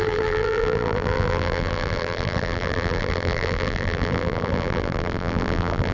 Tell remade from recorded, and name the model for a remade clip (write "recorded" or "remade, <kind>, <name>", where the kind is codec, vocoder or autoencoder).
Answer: remade, vocoder, BigVGAN v2